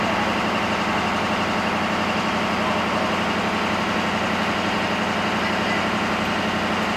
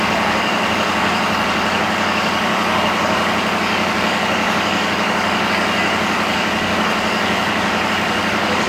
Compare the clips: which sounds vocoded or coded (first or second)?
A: second